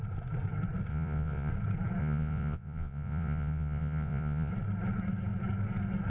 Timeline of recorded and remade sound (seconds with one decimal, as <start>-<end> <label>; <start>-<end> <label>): 0.0-0.9 recorded; 0.9-1.5 remade; 1.5-2.0 recorded; 2.0-4.5 remade; 4.5-6.1 recorded